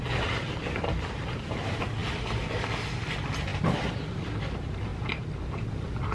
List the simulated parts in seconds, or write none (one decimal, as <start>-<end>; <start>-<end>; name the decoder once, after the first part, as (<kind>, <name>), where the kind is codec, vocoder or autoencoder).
none